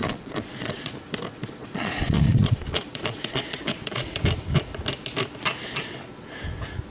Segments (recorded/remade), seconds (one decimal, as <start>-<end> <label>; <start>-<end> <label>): 0.0-0.9 remade; 0.9-1.6 recorded; 1.6-4.2 remade; 4.2-6.9 recorded